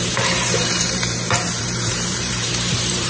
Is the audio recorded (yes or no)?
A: no